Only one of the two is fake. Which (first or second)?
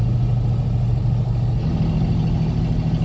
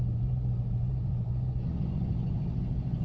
second